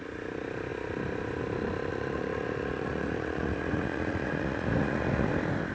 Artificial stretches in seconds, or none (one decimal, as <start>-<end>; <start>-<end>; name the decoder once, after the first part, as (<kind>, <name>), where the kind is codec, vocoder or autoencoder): 1.9-5.3 (vocoder, Vocos)